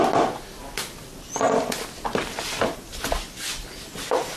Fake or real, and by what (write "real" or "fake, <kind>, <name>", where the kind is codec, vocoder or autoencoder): real